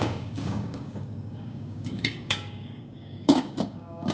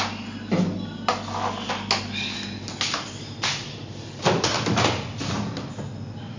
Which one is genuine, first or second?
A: second